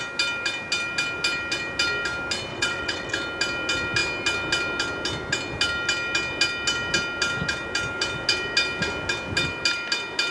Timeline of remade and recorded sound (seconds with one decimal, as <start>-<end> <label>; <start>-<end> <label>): 0.0-2.5 recorded; 2.5-3.1 remade; 3.1-10.3 recorded